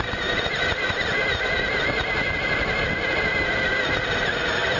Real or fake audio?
real